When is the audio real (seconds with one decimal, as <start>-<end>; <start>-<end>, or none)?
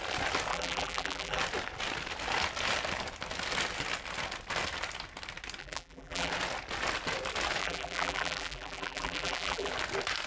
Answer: 0.0-0.5; 1.4-5.6; 6.3-7.6; 9.7-10.3